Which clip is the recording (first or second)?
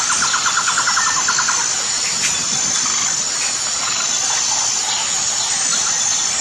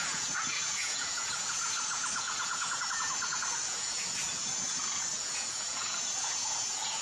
first